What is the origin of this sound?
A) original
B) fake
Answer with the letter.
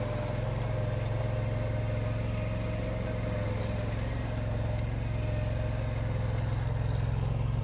A